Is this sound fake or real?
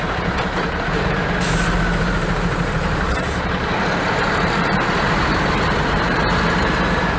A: fake